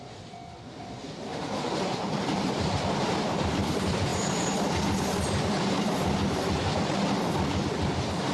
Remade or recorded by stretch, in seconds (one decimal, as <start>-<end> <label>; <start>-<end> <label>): 0.0-1.3 recorded; 1.3-2.7 remade; 2.7-8.3 recorded